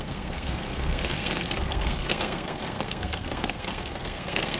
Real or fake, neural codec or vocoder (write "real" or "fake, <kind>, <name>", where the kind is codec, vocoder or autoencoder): fake, codec, SNAC